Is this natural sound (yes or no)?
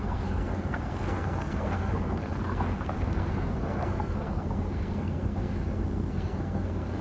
no